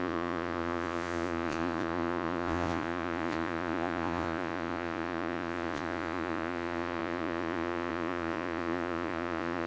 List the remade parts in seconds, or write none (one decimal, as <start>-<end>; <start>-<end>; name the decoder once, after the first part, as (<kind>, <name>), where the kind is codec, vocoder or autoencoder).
0.0-9.7 (vocoder, Vocos)

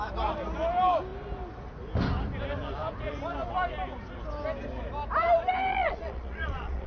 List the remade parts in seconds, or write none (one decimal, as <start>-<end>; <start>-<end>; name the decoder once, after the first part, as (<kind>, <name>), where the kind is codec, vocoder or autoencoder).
5.7-6.9 (vocoder, Vocos)

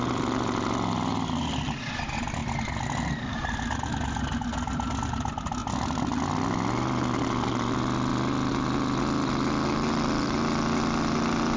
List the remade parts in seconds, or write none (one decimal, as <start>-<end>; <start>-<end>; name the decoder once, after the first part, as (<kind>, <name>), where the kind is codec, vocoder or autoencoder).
none

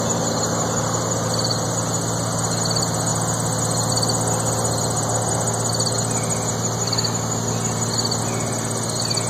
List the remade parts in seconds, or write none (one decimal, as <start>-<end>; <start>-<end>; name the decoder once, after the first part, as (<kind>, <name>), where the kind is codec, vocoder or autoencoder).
none

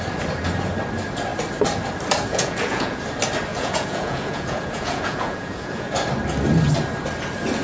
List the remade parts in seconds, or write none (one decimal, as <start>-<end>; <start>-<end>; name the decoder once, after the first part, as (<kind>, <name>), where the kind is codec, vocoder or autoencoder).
2.3-3.0 (vocoder, Vocos); 3.5-5.9